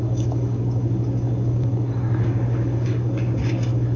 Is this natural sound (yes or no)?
no